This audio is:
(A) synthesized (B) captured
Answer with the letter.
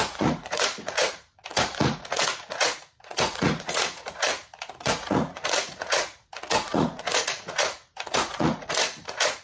A